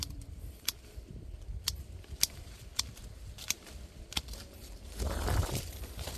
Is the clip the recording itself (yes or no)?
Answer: no